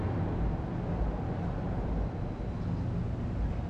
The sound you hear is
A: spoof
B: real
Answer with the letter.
B